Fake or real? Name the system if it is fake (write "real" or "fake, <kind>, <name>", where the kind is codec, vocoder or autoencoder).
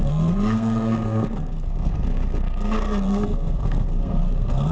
fake, codec, SNAC